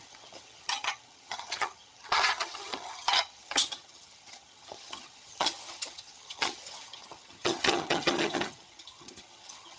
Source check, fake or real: fake